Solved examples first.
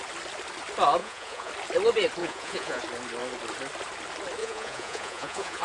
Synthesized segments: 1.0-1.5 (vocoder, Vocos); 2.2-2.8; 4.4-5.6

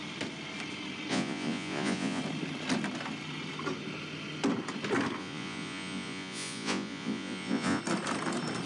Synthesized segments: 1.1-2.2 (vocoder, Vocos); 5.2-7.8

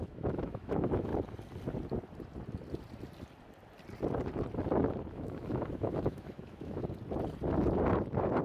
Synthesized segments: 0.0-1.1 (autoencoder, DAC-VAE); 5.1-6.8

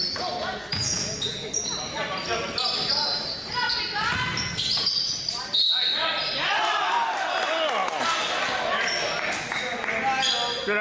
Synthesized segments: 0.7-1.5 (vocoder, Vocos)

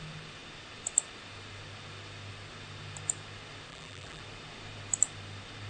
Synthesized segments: 3.7-4.2 (vocoder, BigVGAN v2)

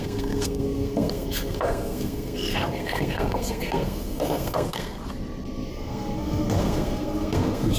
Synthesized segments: 0.0-5.0 (codec, SNAC); 5.7-7.8